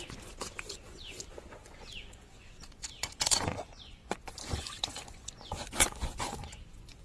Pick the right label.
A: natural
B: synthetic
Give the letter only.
B